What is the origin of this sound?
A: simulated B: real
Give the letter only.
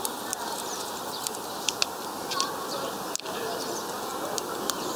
B